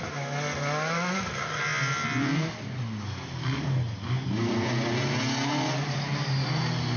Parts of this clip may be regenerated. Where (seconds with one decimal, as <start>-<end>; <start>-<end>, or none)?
none